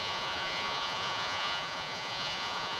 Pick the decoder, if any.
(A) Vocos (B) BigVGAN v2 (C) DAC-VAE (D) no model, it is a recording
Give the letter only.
A